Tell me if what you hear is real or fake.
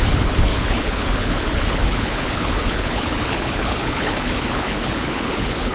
fake